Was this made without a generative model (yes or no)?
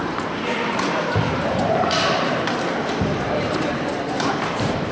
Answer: no